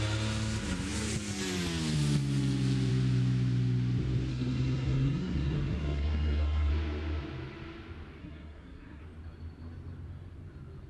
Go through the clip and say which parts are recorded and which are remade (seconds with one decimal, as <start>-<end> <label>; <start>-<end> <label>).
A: 0.0-4.3 recorded; 4.3-6.7 remade; 6.7-8.2 recorded; 8.2-9.0 remade; 9.0-10.9 recorded

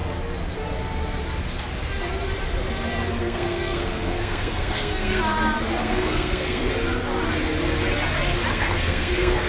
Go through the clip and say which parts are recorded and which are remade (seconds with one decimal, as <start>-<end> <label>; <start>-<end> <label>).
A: 0.0-3.2 recorded; 3.2-5.2 remade; 5.2-5.8 recorded; 5.8-6.7 remade; 6.7-8.5 recorded; 8.5-9.5 remade

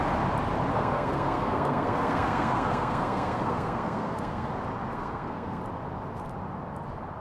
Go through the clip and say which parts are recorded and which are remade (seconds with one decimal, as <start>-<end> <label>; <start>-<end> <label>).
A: 0.0-0.7 recorded; 0.7-4.5 remade; 4.5-4.9 recorded; 4.9-5.6 remade; 5.6-7.2 recorded

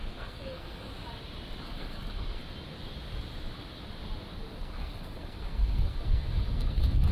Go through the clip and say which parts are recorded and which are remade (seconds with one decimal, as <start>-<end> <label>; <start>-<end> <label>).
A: 0.0-0.9 remade; 0.9-1.6 recorded; 1.6-2.4 remade; 2.4-4.6 recorded; 4.6-7.1 remade

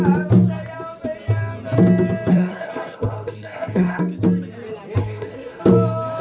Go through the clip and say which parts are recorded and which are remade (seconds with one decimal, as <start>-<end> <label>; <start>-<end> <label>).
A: 0.0-2.3 recorded; 2.3-4.0 remade; 4.0-5.0 recorded; 5.0-5.6 remade; 5.6-6.2 recorded